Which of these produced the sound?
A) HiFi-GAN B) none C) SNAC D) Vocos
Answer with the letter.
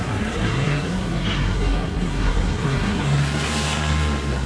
C